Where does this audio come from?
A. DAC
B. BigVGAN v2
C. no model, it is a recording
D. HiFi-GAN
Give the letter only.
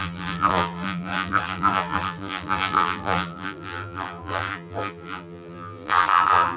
B